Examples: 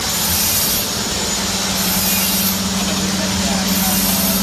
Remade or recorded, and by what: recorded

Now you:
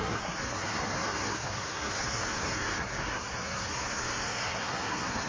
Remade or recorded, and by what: remade, codec, SNAC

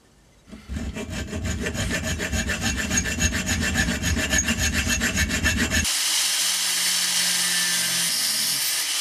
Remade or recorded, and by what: recorded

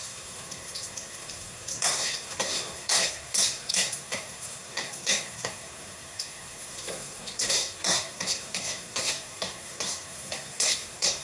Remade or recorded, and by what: remade, codec, SNAC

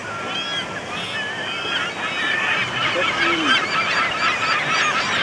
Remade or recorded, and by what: recorded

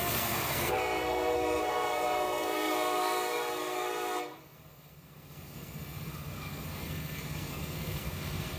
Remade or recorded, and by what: remade, codec, SNAC